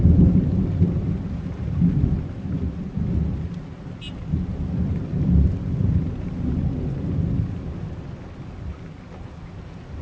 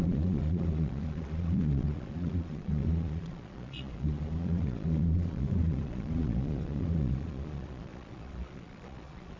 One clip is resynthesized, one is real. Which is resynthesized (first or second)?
second